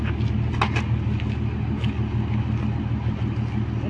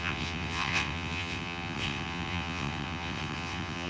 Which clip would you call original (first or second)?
first